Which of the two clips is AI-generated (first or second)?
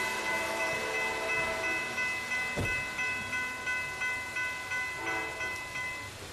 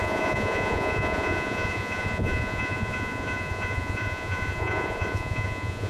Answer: second